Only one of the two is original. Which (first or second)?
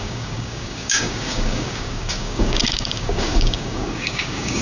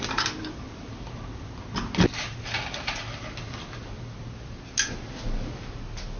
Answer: second